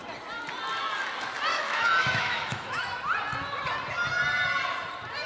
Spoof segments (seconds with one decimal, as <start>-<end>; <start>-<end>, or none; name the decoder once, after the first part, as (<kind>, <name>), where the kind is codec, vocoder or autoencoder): 1.5-2.8 (autoencoder, DAC-VAE)